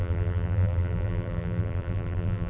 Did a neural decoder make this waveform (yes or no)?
yes